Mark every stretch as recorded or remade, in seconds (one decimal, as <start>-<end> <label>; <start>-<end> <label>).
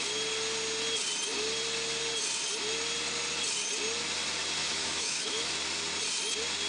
0.0-4.6 recorded; 4.6-5.5 remade; 5.5-6.7 recorded